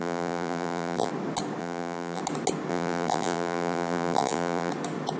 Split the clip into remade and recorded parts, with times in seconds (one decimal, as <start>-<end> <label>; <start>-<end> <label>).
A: 0.0-1.1 remade; 1.1-1.6 recorded; 1.6-2.2 remade; 2.2-2.7 recorded; 2.7-4.7 remade; 4.7-5.2 recorded